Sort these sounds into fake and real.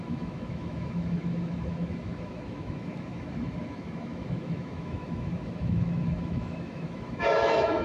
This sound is fake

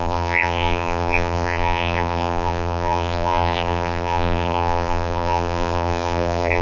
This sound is fake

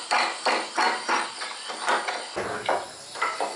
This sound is real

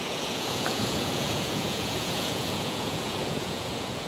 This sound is fake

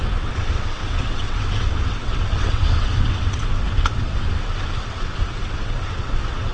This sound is fake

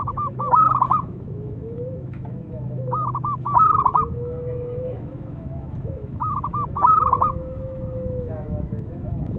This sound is fake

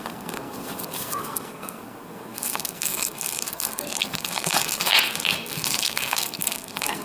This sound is fake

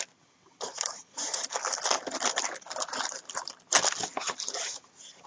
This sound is real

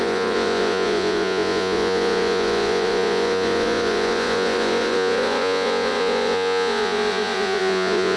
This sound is fake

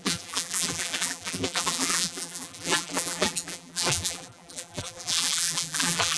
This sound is fake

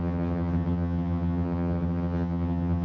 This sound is fake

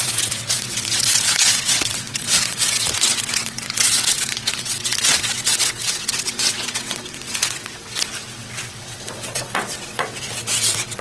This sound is fake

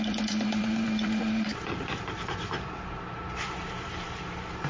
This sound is fake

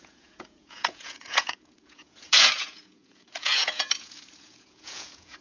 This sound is fake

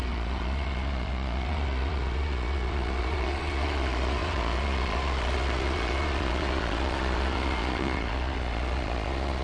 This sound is fake